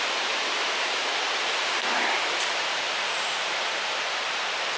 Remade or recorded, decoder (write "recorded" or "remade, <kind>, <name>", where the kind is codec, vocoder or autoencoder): remade, vocoder, BigVGAN v2